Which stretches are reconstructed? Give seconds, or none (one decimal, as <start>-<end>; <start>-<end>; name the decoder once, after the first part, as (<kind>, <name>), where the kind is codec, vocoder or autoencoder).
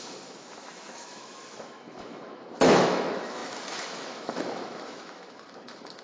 0.0-6.0 (autoencoder, DAC-VAE)